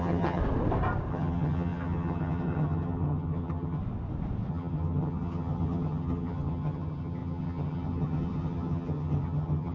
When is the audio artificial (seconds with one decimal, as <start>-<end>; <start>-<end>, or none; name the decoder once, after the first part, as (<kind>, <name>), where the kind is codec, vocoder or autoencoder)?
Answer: 0.0-0.4 (vocoder, HiFi-GAN); 1.1-3.8; 4.5-9.7